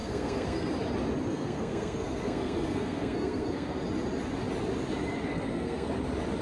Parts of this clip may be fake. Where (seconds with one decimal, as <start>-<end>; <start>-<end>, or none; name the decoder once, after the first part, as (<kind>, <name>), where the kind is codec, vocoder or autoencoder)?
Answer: 0.0-0.7 (codec, SNAC); 1.3-3.8; 5.3-5.9